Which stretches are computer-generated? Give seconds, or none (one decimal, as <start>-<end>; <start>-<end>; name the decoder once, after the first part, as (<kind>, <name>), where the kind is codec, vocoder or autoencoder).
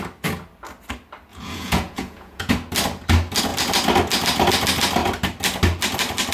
1.3-2.5 (vocoder, Vocos)